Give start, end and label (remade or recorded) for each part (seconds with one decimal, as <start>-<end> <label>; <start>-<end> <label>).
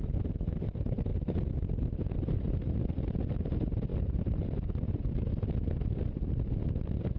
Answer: 0.0-7.2 recorded